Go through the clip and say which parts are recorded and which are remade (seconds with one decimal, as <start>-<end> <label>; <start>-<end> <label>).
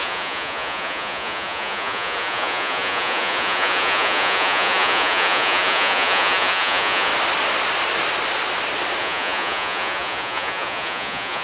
0.0-7.1 remade; 7.1-9.0 recorded; 9.0-11.4 remade